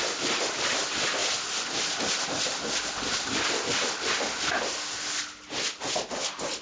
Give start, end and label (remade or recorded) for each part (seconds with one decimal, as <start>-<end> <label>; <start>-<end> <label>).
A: 0.0-6.6 recorded